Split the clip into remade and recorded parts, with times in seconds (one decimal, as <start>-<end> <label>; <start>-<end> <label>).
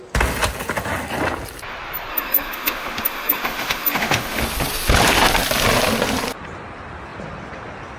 0.0-2.1 recorded; 2.1-4.4 remade; 4.4-8.0 recorded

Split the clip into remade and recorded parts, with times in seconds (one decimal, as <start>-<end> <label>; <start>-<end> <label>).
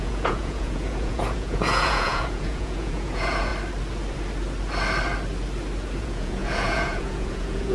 0.0-3.5 remade; 3.5-6.0 recorded; 6.0-7.7 remade